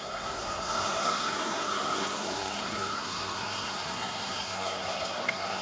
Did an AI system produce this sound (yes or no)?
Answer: yes